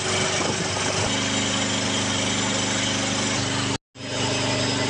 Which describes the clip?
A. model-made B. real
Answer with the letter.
B